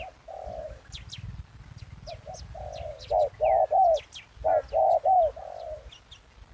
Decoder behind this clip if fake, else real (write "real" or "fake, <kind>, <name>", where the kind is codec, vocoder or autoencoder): real